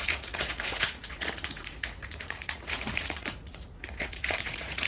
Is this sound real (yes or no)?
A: no